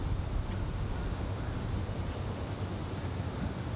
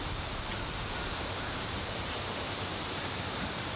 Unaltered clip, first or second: first